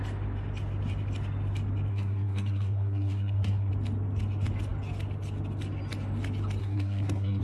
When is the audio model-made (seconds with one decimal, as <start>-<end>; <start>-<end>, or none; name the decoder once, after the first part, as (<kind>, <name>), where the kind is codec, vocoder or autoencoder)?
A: 1.9-3.7 (codec, SNAC); 6.6-7.4